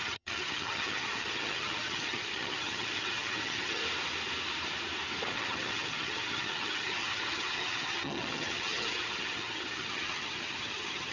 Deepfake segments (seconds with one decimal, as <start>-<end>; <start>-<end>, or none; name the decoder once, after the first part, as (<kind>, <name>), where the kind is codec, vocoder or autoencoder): 0.0-3.8 (vocoder, HiFi-GAN); 5.3-11.1